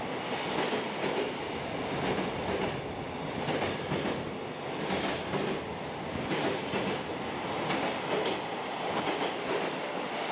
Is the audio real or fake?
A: real